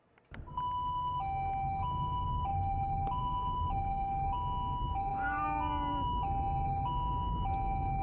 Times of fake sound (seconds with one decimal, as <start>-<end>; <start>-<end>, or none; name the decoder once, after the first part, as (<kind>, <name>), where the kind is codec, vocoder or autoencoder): none